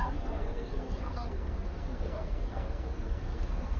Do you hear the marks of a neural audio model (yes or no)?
yes